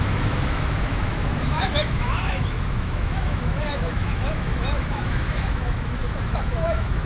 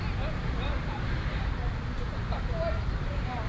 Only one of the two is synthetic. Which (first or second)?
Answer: first